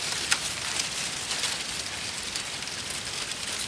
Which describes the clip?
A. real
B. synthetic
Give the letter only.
A